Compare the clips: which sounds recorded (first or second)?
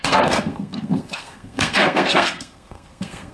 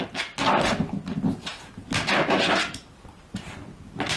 second